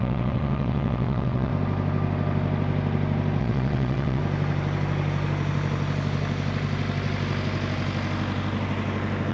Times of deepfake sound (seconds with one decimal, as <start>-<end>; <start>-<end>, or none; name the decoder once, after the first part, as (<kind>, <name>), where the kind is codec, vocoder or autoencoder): 0.0-1.5 (vocoder, WaveNeXt); 3.4-4.2